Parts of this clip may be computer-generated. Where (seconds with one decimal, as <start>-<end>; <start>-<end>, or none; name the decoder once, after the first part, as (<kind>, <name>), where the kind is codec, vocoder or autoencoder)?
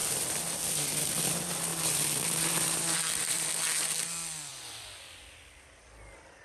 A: 0.0-1.0 (vocoder, BigVGAN v2); 1.7-3.5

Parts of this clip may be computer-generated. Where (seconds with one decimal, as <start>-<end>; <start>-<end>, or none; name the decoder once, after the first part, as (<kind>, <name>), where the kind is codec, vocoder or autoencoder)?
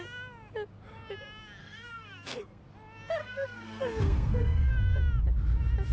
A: 1.6-2.6 (codec, SNAC); 3.2-4.7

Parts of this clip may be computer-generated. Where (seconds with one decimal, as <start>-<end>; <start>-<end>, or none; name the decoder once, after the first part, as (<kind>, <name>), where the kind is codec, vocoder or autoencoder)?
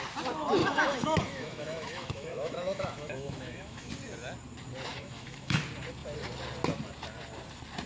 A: 0.6-3.9 (autoencoder, DAC-VAE); 4.9-5.6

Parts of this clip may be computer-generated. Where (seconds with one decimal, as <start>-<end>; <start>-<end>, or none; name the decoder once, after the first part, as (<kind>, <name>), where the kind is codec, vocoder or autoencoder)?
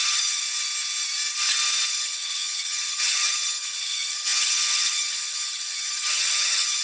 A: 0.0-0.4 (vocoder, HiFi-GAN); 1.9-6.8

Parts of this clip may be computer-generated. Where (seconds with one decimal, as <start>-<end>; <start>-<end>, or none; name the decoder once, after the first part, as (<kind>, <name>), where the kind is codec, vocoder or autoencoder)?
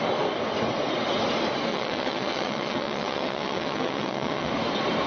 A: 1.7-4.5 (vocoder, WaveNeXt)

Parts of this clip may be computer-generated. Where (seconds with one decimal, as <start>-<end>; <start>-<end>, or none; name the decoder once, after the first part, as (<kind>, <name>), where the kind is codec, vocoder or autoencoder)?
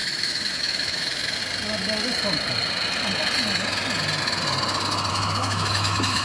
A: 0.0-1.4 (autoencoder, DAC-VAE); 5.1-6.2